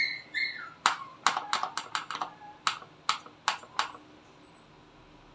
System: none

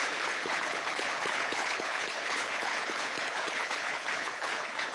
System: codec, HILCodec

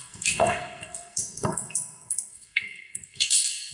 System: codec, SNAC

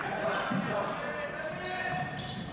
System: none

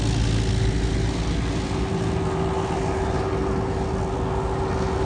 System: none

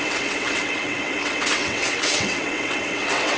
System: vocoder, WaveNeXt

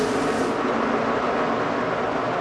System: none